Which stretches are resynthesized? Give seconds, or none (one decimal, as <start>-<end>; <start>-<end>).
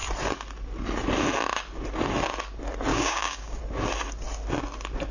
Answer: 2.9-3.6